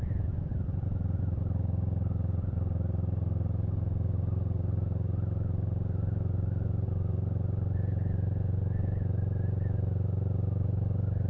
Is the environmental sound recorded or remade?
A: recorded